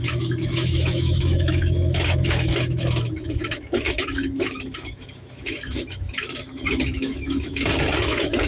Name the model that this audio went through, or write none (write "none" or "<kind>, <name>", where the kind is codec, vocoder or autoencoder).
autoencoder, DAC-VAE